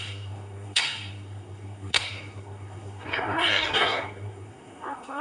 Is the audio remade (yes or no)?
yes